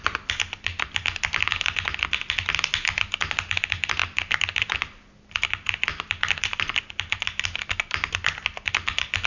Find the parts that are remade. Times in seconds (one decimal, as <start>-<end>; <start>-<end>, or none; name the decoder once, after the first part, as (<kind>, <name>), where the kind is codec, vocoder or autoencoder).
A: none

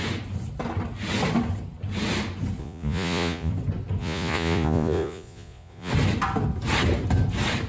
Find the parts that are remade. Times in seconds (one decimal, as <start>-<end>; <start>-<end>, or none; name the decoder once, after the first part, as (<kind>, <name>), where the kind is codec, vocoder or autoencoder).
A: 2.6-3.5 (vocoder, Vocos); 4.0-5.9

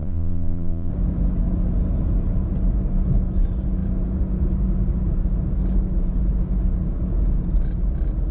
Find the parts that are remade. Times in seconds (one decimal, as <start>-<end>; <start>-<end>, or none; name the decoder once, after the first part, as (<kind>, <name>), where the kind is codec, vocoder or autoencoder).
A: 0.0-0.9 (vocoder, Vocos)